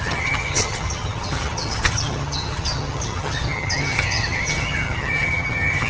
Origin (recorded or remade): remade